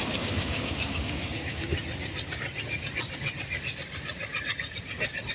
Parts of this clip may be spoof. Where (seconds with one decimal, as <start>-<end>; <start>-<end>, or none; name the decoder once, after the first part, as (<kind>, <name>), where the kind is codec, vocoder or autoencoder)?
0.0-1.7 (codec, DAC)